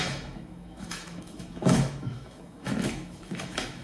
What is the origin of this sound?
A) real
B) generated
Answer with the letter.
B